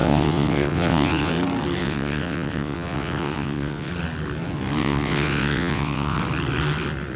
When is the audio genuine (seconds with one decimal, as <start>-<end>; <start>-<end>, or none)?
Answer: 1.3-1.8; 3.9-4.8; 6.2-7.2